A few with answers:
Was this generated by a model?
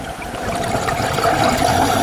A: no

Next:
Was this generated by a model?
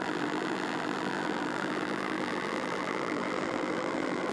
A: yes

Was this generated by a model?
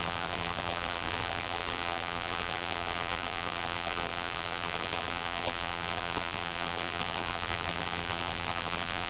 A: yes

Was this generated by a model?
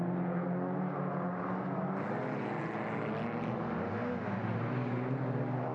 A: no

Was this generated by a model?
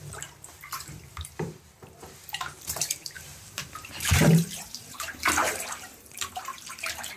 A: yes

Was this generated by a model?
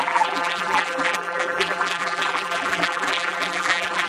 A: yes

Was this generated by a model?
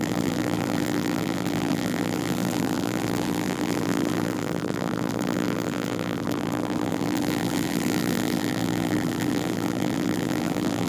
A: yes